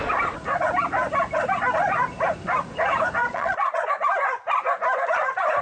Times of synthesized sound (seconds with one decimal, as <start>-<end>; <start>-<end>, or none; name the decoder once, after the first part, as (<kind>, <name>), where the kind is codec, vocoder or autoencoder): 3.2-3.9 (vocoder, Vocos)